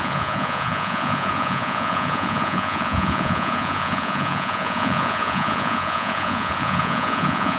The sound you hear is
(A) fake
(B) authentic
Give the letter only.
A